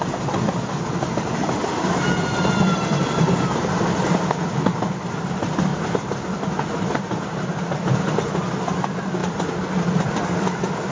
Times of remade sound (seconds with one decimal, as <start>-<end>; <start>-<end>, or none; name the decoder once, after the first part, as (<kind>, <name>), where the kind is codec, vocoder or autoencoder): 1.4-3.4 (vocoder, BigVGAN v2); 5.7-8.0; 9.2-10.3